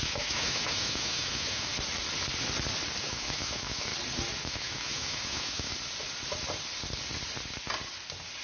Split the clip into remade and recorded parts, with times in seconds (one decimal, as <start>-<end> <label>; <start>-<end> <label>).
0.0-1.7 remade; 1.7-3.0 recorded; 3.0-3.9 remade; 3.9-4.4 recorded; 4.4-5.7 remade; 5.7-8.4 recorded